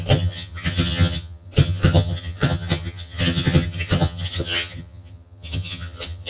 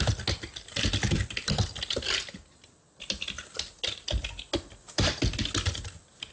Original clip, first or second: second